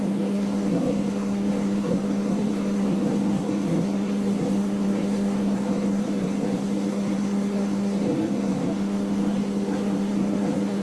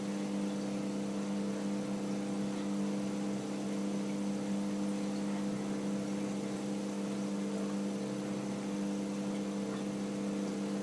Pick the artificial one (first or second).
first